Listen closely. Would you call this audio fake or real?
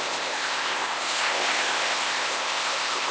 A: fake